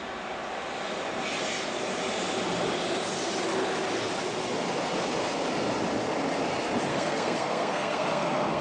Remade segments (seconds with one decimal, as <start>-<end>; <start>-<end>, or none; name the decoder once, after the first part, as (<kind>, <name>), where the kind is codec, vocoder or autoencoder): 6.9-8.6 (codec, SNAC)